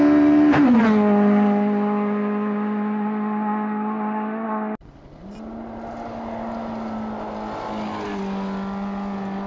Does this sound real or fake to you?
real